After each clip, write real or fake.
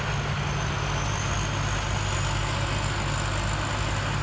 real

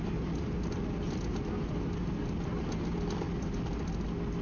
real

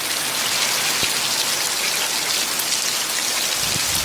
real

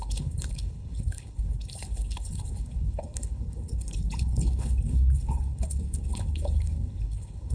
fake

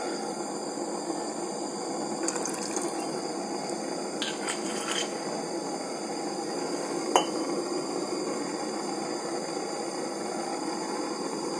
real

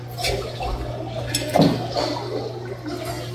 real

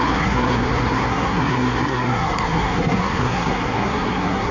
fake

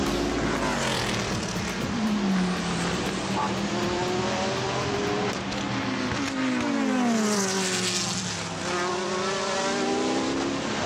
real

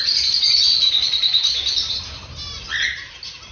real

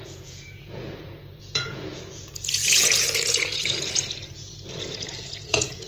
fake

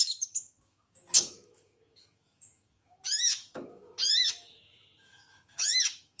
fake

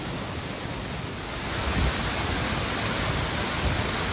real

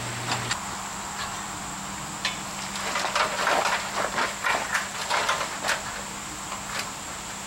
real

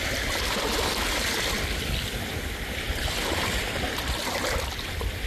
real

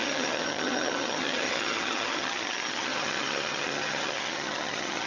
fake